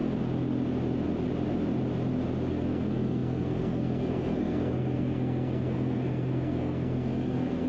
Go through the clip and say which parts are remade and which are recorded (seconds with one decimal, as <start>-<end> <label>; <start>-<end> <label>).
0.0-2.5 recorded; 2.5-7.7 remade